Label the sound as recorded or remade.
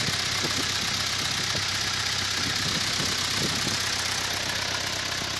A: recorded